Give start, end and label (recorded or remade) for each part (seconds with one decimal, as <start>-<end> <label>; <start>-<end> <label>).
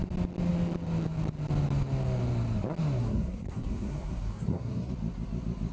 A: 0.0-3.0 recorded; 3.0-4.9 remade; 4.9-5.7 recorded